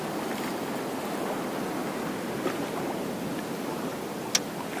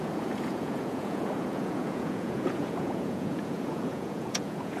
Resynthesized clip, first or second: second